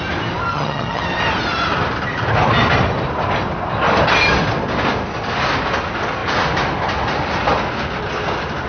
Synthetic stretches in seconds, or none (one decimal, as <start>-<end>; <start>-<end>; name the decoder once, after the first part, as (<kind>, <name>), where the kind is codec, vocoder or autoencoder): 0.5-1.0 (vocoder, HiFi-GAN)